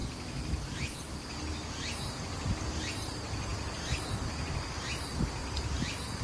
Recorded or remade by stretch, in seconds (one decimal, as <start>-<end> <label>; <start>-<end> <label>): 0.0-5.4 recorded; 5.4-6.2 remade